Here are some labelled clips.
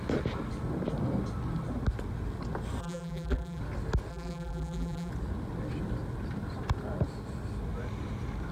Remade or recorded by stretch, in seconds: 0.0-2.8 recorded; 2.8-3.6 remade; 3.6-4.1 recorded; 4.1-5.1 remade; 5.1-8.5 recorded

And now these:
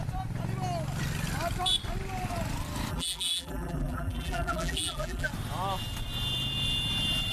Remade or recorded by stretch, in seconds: 0.0-2.9 recorded; 2.9-5.3 remade; 5.3-7.3 recorded

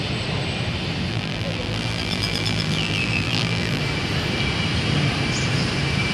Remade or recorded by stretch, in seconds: 0.0-1.1 recorded; 1.1-3.8 remade; 3.8-6.1 recorded

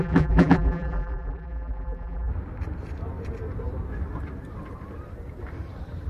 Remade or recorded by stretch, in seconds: 0.0-2.3 remade; 2.3-6.1 recorded

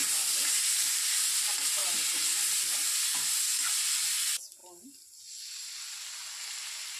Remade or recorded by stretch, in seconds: 0.0-7.0 recorded

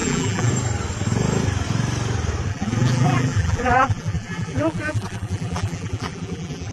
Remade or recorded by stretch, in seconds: 0.0-0.5 remade; 0.5-2.5 recorded; 2.5-6.7 remade

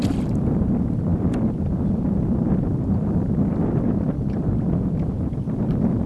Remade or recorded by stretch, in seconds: 0.0-6.1 recorded

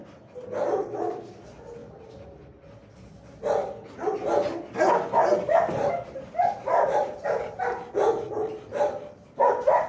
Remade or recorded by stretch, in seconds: 0.0-6.7 recorded; 6.7-7.8 remade; 7.8-9.9 recorded